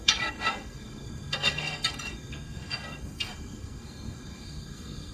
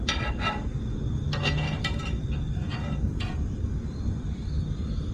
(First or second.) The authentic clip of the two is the second